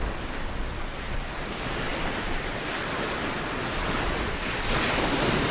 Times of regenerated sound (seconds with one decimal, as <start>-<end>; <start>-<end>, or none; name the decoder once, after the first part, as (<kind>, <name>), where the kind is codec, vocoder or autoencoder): none